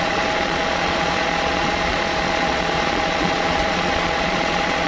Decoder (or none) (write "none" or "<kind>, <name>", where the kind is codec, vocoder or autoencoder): vocoder, Vocos